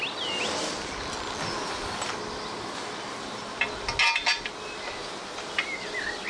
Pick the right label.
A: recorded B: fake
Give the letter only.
A